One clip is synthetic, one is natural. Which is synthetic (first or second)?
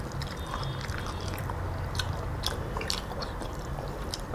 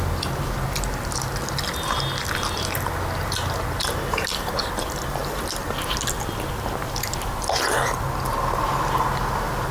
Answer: first